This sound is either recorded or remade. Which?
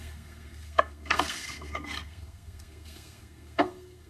remade